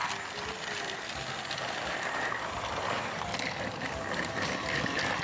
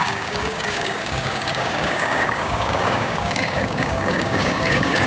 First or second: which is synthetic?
second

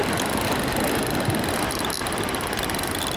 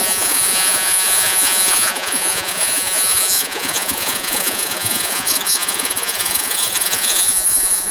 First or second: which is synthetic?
second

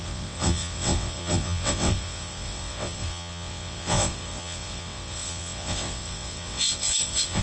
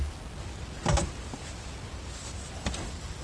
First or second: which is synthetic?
first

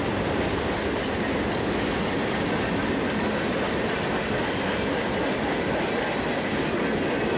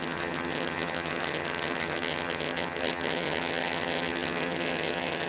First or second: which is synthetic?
second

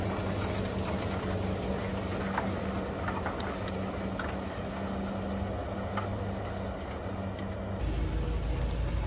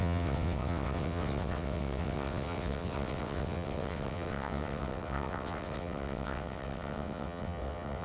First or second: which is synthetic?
second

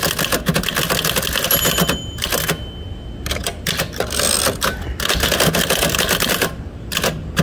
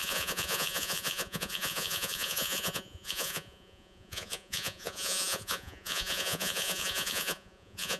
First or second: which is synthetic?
second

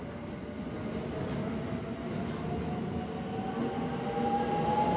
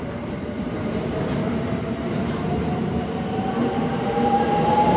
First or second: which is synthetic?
second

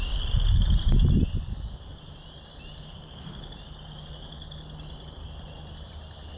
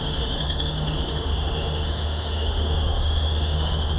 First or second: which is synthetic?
second